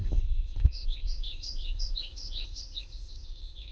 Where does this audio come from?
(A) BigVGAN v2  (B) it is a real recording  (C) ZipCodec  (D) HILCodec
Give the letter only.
C